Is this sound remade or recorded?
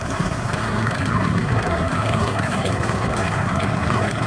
remade